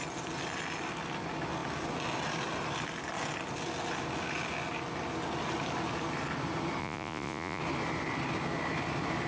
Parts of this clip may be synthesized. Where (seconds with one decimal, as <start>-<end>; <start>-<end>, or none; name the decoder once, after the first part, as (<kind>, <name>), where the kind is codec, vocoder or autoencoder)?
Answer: 6.8-7.6 (vocoder, Vocos)